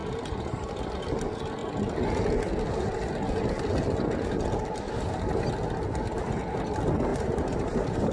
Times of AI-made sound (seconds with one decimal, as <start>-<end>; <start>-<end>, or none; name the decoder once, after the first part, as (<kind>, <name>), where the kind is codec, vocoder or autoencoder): 0.0-0.9 (vocoder, BigVGAN v2); 7.1-8.1